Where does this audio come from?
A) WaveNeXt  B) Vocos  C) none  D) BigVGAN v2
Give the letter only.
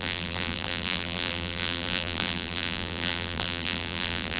D